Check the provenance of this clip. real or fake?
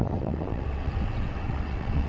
fake